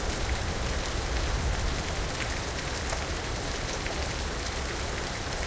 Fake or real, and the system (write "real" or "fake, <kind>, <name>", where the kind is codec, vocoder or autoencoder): real